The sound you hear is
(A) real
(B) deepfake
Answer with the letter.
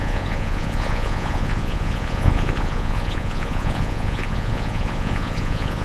B